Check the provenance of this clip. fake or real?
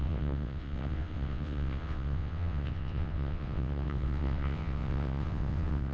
fake